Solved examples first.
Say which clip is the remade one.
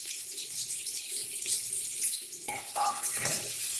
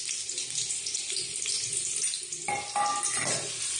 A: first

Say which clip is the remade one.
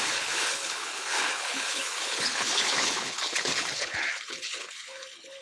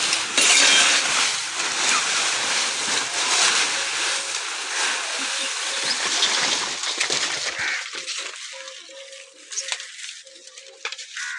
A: first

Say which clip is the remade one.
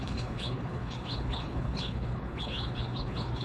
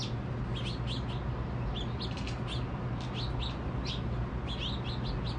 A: first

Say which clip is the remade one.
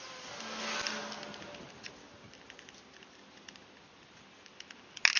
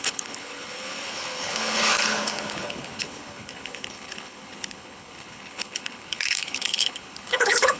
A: second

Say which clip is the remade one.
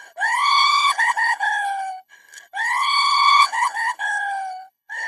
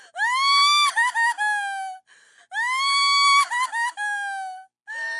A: first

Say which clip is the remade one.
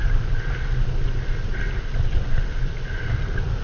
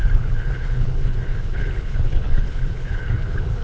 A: second